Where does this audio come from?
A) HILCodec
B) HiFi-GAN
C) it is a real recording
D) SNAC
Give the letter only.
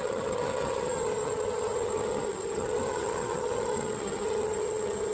B